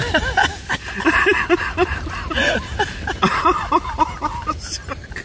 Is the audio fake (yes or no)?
no